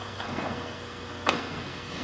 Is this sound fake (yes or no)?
yes